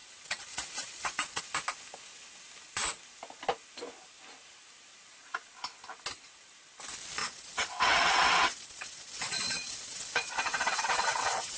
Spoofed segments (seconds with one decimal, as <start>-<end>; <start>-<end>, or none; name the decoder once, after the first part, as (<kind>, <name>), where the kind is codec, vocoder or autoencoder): 0.0-1.4 (vocoder, WaveNeXt); 7.2-11.6